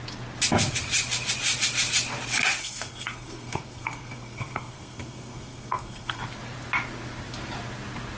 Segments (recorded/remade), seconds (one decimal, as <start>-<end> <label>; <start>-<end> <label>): 0.0-2.6 recorded; 2.6-6.2 remade; 6.2-8.2 recorded